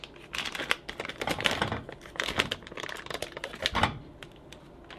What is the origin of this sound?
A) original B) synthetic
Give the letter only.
A